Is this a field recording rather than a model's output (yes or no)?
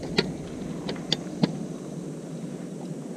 yes